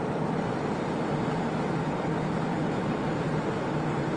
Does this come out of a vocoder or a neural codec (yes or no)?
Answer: no